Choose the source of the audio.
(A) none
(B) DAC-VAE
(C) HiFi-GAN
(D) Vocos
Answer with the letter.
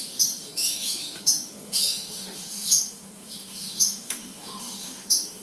B